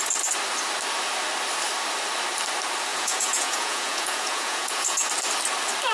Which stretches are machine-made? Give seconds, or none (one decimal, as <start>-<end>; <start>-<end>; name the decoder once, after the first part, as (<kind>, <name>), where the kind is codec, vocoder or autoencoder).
2.9-5.1 (vocoder, Vocos)

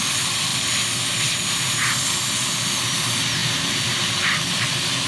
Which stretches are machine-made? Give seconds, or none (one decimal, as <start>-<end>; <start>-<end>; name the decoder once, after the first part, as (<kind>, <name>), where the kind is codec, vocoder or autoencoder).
3.4-4.0 (vocoder, BigVGAN v2)